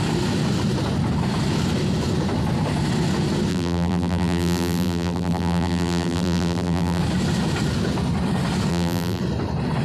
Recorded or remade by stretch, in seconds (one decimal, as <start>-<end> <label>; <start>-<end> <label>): 0.0-3.5 recorded; 3.5-7.0 remade; 7.0-8.7 recorded; 8.7-9.2 remade; 9.2-9.8 recorded